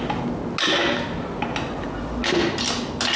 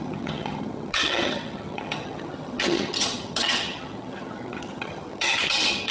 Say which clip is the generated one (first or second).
second